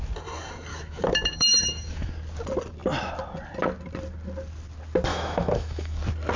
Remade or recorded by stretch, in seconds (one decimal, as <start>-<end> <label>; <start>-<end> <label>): 0.0-0.7 recorded; 0.7-2.1 remade; 2.1-5.1 recorded; 5.1-6.0 remade; 6.0-6.4 recorded